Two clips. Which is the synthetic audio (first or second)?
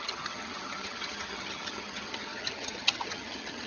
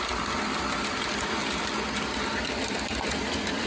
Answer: first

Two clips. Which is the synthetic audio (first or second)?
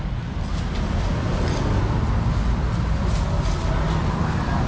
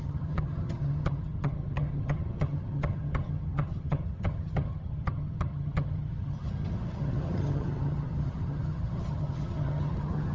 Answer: second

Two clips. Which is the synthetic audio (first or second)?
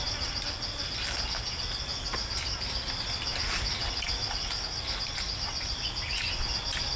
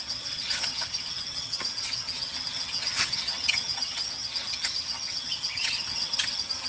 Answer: second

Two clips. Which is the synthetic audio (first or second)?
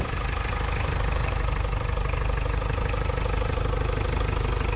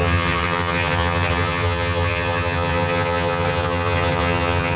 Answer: second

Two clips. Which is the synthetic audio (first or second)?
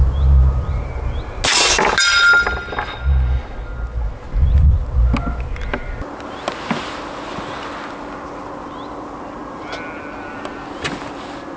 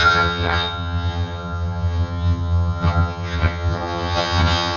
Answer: second